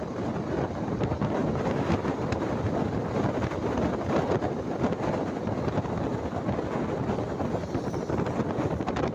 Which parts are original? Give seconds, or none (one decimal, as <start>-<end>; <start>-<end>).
0.0-1.4; 2.5-9.1